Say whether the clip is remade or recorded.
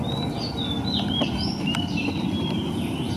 recorded